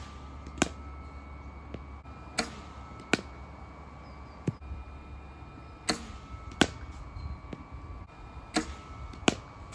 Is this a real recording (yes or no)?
yes